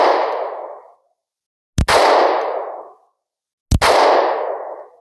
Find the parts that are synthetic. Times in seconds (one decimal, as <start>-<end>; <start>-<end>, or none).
none